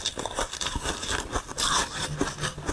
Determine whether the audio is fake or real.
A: real